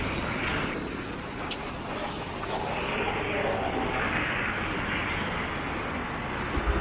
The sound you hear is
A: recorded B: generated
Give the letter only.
A